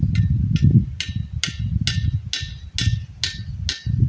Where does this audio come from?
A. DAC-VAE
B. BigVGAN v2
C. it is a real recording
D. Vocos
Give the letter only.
C